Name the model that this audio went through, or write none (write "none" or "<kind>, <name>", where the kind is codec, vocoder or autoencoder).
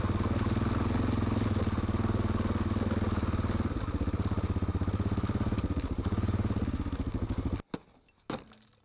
none